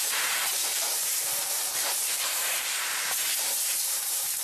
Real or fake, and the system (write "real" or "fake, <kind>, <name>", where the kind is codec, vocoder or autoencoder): fake, vocoder, BigVGAN v2